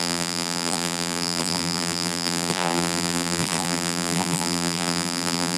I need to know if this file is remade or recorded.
remade